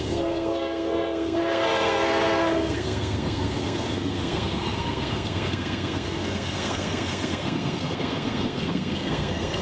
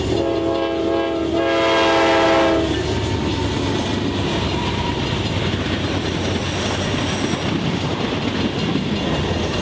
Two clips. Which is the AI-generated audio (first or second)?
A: first